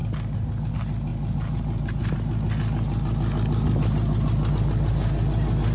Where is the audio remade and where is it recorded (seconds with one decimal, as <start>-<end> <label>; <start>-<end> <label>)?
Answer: 0.0-5.7 recorded